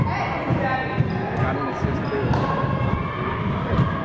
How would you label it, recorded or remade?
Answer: recorded